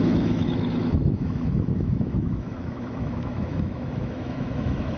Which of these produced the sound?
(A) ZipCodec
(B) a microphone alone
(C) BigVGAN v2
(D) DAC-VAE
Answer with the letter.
D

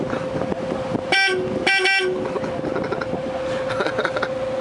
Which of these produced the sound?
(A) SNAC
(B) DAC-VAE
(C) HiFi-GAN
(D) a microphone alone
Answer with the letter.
D